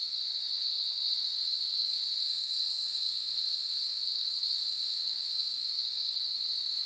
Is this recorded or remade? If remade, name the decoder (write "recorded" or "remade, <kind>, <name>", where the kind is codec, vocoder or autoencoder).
remade, codec, SNAC